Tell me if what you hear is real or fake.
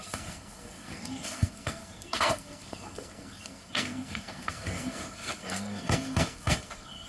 fake